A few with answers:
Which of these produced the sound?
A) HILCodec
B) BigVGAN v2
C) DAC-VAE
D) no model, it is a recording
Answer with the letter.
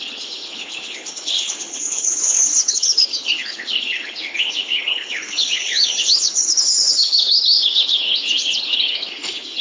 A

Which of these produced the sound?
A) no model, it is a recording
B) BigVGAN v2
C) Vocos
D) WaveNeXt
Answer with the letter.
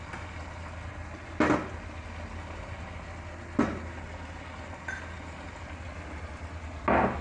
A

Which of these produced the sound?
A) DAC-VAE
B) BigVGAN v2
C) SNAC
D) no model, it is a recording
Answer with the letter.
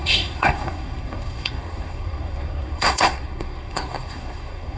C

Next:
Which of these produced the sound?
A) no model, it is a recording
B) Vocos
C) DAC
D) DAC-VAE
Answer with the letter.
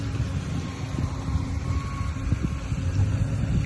A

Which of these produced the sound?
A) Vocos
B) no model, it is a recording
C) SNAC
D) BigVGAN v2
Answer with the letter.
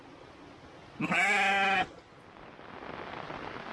B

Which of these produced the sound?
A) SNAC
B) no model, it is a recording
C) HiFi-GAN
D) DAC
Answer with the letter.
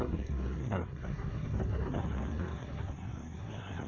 A